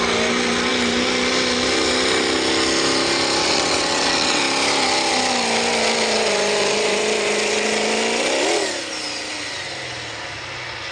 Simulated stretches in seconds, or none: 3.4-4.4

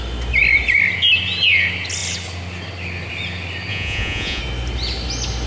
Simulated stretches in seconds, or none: 3.7-4.4

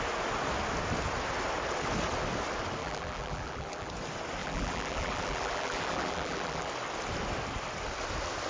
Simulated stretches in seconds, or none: 2.8-3.9; 4.4-6.7

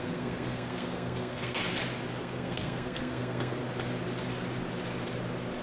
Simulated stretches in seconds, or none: 0.0-1.6; 2.2-3.6

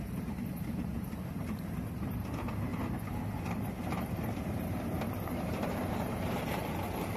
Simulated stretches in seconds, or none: 0.0-2.7; 3.5-7.2

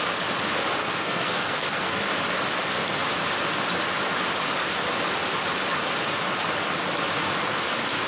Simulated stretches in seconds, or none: 0.8-2.0

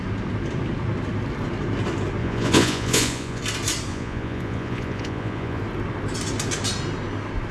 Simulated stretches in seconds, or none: 2.2-3.4; 3.9-5.6

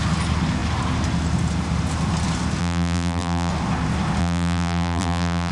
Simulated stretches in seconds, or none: 2.6-3.5; 4.2-5.5